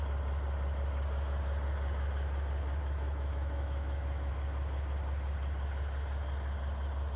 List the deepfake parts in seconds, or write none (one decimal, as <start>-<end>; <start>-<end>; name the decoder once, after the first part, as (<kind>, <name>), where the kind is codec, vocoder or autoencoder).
2.8-4.3 (autoencoder, DAC-VAE)